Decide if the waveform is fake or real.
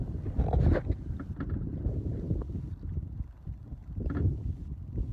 real